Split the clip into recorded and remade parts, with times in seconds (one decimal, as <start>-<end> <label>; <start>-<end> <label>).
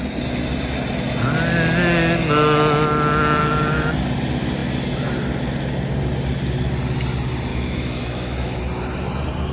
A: 0.0-3.4 recorded; 3.4-3.9 remade; 3.9-7.5 recorded; 7.5-8.6 remade; 8.6-9.5 recorded